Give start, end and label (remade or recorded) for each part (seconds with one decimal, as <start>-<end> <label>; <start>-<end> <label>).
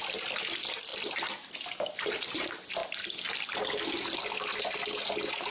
0.0-5.5 recorded